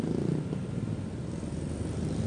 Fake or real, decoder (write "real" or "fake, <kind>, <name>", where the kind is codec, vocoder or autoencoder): real